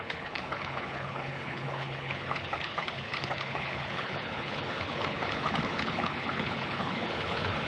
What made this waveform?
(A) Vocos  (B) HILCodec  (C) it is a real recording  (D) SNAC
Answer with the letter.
B